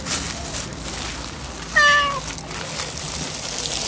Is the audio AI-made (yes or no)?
no